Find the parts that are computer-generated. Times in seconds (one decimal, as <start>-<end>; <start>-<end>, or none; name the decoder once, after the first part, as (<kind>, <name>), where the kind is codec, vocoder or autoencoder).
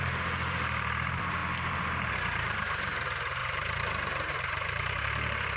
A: 0.0-3.4 (vocoder, BigVGAN v2); 4.3-5.6